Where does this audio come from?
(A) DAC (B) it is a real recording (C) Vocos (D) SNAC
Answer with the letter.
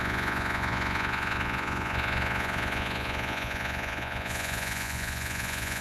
C